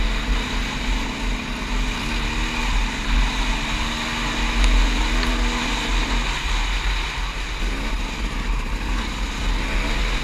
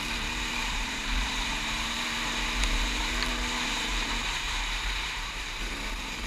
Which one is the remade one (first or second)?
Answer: second